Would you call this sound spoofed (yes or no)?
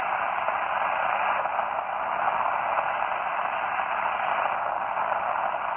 no